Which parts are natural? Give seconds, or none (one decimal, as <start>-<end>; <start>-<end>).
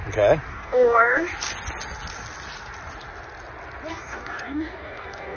0.0-0.5; 1.3-3.9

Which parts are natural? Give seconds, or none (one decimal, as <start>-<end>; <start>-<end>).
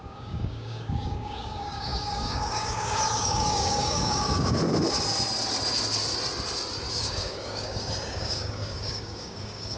4.6-6.9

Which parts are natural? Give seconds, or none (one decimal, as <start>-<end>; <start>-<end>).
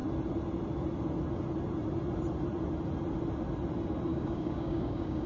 0.0-4.1